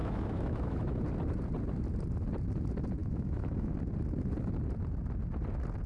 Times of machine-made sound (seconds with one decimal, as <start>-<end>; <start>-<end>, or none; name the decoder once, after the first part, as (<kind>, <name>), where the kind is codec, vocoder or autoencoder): 0.0-1.0 (autoencoder, DAC-VAE); 3.0-3.7